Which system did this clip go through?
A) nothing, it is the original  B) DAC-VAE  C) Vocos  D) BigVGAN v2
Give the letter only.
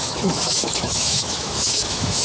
B